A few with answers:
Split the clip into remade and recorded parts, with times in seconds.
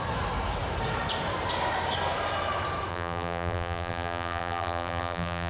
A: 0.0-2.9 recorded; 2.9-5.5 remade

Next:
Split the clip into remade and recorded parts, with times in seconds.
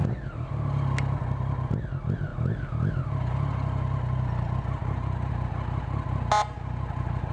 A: 0.0-4.8 recorded; 4.8-5.3 remade; 5.3-7.3 recorded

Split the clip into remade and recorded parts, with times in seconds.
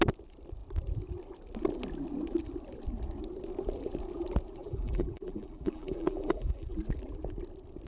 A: 0.0-4.6 recorded; 4.6-6.8 remade; 6.8-7.9 recorded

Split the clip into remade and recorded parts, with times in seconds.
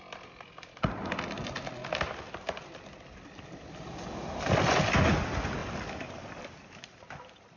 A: 0.0-7.6 recorded